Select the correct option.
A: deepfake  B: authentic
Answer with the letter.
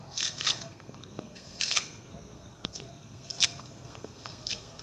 A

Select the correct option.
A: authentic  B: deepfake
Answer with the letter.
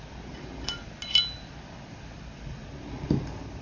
A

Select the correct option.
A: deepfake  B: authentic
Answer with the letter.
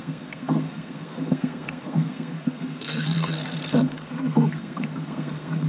A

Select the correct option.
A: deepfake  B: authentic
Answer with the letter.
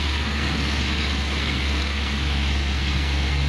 A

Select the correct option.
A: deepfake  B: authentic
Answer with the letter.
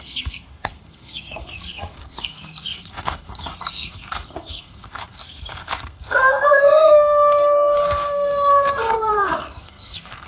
A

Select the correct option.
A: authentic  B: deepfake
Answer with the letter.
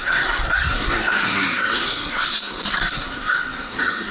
B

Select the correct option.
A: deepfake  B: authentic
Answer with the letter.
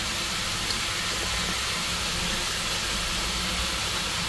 B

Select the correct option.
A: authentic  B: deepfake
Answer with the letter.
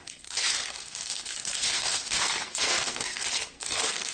B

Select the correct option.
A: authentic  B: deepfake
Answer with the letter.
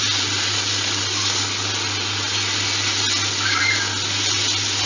A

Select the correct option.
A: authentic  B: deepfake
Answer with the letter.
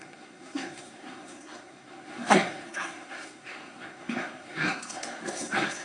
B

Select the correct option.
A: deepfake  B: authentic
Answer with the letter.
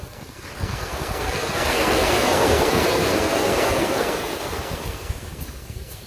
A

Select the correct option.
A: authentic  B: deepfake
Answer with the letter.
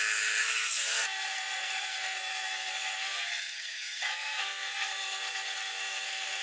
B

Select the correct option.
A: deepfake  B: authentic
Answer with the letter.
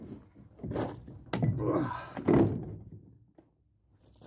B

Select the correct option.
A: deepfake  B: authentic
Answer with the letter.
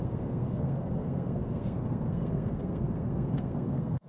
A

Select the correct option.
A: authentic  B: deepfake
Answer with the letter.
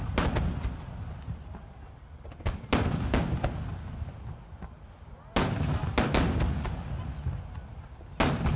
A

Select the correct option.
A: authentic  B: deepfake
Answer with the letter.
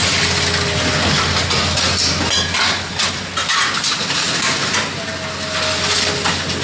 A